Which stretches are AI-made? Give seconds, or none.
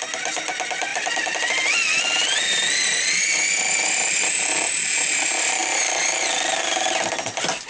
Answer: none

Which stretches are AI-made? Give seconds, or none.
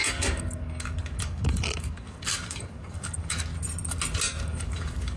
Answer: 0.0-3.5 (codec, DAC); 4.4-5.2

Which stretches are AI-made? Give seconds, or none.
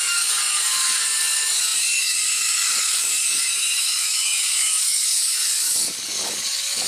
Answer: 0.0-6.9 (codec, DAC)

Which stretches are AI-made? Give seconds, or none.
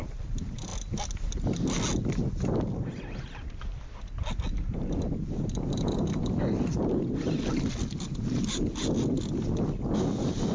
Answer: none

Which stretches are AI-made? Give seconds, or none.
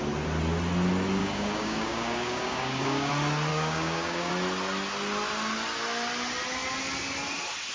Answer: 1.2-3.1 (codec, DAC); 3.5-4.3